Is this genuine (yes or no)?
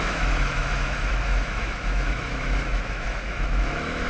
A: no